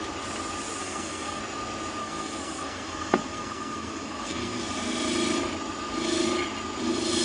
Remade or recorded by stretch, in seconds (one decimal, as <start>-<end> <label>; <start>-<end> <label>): 0.0-0.8 recorded; 0.8-1.4 remade; 1.4-2.0 recorded; 2.0-4.6 remade; 4.6-7.2 recorded